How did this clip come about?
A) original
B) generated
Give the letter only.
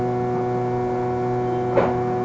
A